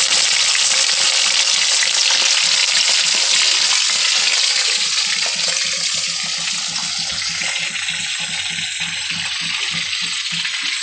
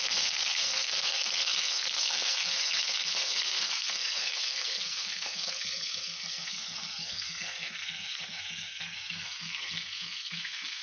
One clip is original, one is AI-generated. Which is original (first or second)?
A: first